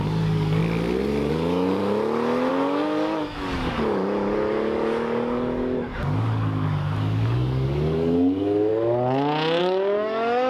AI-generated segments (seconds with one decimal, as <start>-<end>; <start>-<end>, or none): 0.0-0.6; 1.3-1.8; 2.5-8.7; 9.6-10.5